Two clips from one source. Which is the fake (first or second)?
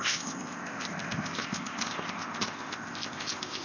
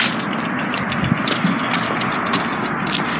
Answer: first